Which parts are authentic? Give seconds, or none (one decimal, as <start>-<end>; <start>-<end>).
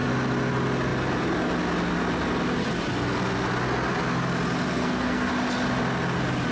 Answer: 0.0-4.7; 5.3-6.5